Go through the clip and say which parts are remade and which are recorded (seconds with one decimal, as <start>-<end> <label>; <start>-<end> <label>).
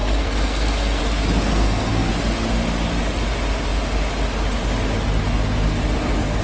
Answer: 0.0-1.0 remade; 1.0-1.5 recorded; 1.5-2.1 remade; 2.1-6.4 recorded